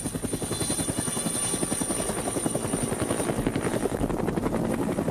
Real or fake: real